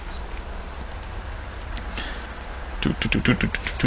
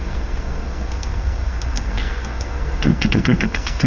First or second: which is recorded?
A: first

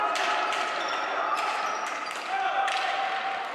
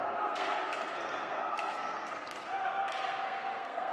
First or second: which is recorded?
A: first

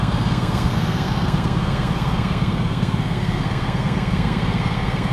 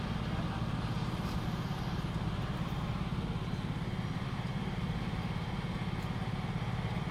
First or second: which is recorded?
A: second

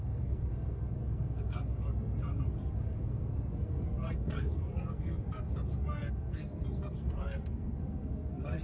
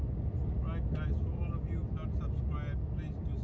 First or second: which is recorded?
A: second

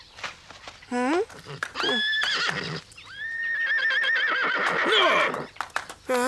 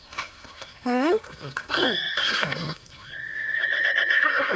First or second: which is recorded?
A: first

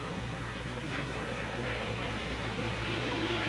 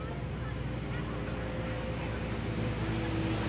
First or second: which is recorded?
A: second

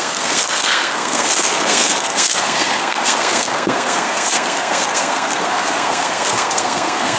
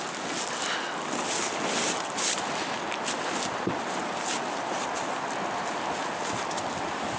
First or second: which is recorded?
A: second